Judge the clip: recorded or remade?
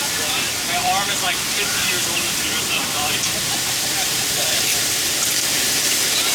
remade